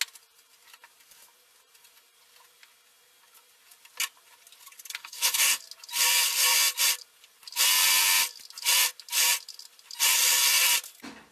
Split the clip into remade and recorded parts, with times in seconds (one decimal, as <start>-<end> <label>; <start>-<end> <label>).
0.0-5.0 recorded; 5.0-5.6 remade; 5.6-11.3 recorded